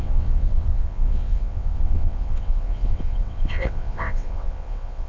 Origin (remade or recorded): remade